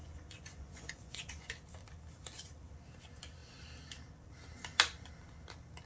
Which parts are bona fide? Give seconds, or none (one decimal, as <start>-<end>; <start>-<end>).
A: 1.5-5.9